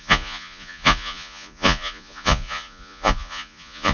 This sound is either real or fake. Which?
fake